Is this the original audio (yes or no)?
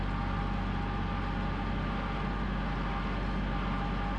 yes